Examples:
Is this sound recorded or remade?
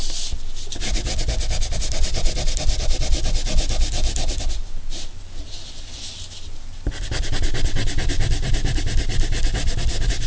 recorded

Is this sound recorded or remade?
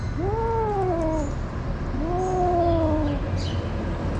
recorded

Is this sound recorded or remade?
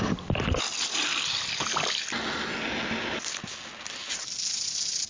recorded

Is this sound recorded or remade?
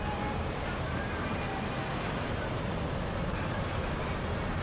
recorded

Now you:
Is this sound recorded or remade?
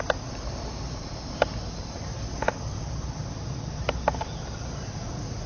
recorded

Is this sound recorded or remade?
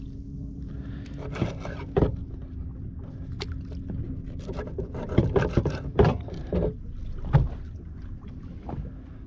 recorded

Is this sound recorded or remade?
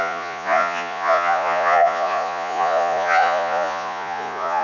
remade